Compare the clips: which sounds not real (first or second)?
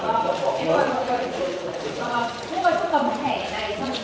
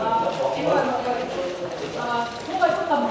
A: first